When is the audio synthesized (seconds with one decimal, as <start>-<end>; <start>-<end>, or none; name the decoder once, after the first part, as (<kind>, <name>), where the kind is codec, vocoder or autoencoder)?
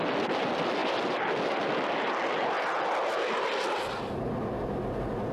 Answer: none